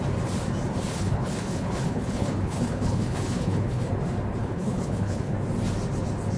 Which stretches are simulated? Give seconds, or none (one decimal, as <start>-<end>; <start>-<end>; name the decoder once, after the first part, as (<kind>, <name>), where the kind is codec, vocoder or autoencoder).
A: 0.9-3.9 (codec, HILCodec); 4.4-5.3